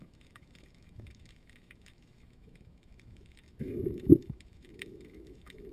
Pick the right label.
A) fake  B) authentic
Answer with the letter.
A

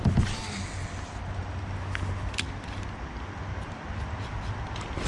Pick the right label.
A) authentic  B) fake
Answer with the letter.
A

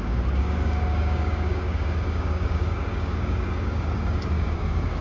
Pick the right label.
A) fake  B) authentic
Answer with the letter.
A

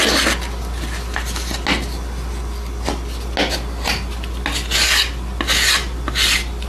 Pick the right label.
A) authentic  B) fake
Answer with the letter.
A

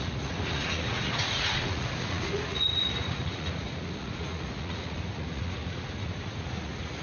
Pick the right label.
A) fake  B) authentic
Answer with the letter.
A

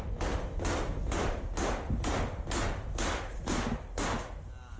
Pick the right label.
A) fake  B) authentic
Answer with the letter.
B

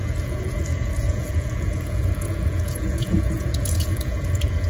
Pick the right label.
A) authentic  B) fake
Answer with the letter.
B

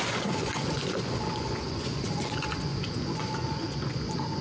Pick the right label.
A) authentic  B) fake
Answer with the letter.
B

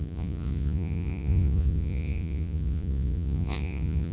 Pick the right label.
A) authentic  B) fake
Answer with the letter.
B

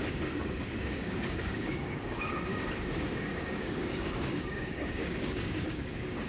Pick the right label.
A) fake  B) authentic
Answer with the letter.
A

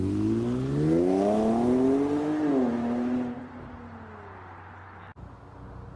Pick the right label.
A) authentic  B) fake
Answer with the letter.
A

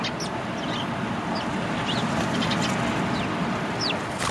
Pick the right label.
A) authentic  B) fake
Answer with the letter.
A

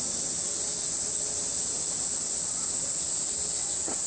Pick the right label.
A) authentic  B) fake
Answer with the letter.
A